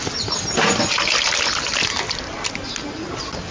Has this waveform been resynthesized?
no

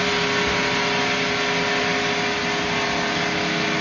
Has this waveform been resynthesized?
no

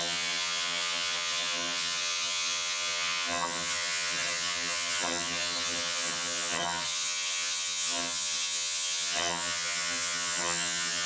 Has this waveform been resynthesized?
yes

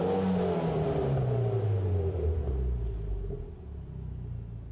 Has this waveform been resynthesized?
no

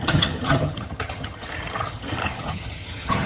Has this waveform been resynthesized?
yes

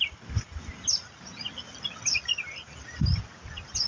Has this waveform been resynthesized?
no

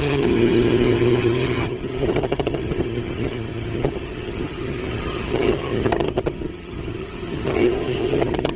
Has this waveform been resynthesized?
yes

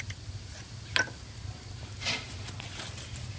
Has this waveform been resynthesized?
no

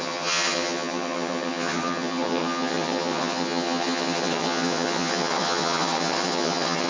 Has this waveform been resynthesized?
yes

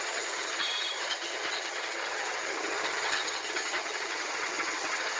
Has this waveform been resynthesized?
yes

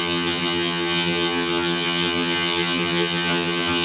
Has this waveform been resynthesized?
yes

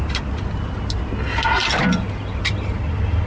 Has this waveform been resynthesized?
no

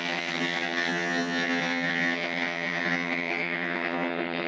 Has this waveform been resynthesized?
yes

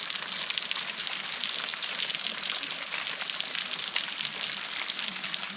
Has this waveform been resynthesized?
no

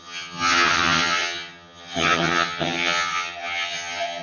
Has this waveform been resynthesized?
yes